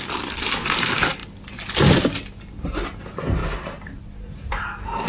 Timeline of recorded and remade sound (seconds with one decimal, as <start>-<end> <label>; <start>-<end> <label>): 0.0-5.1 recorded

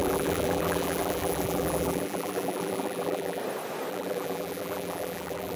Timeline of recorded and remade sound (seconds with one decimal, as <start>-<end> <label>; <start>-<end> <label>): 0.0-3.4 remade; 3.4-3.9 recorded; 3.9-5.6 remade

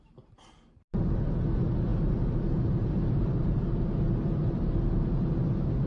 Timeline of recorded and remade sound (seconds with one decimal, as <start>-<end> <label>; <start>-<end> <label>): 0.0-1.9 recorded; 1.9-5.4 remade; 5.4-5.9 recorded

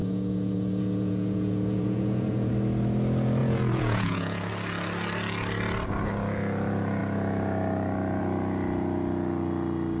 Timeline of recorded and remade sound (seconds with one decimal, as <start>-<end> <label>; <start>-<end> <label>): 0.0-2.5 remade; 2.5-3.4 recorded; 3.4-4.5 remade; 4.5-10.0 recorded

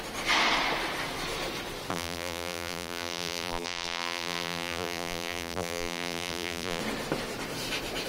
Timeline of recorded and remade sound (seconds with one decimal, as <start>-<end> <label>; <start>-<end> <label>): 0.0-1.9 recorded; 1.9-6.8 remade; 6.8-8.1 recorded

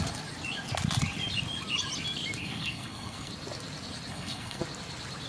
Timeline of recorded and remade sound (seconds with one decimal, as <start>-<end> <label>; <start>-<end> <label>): 0.0-2.4 recorded; 2.4-3.3 remade; 3.3-4.1 recorded; 4.1-4.6 remade; 4.6-5.3 recorded

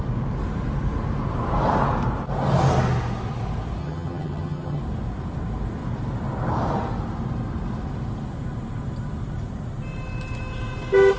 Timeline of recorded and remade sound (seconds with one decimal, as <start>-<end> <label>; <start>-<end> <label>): 0.0-3.8 recorded; 3.8-4.8 remade; 4.8-11.2 recorded